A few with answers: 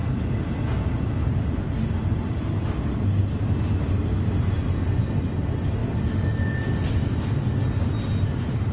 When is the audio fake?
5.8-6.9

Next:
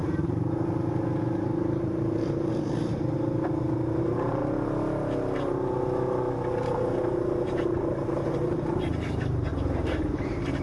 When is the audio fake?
0.0-2.9; 4.0-4.4; 7.4-10.6

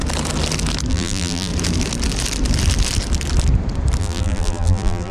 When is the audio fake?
0.9-1.5; 4.0-5.1

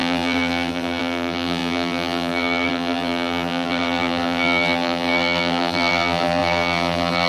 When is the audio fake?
0.0-7.3

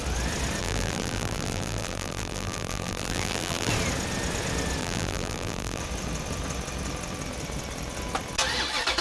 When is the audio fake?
0.6-3.7; 4.8-5.8

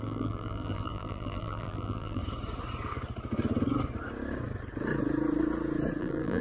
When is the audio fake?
0.0-2.2; 6.0-6.4

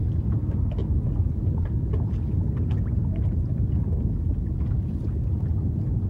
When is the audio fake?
none